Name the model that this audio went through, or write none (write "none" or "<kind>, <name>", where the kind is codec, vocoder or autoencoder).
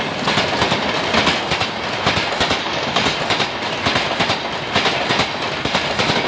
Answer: none